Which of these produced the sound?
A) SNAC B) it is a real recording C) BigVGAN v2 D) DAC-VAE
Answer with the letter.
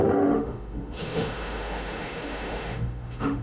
D